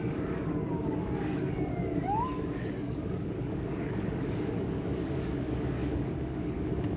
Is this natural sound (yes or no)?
no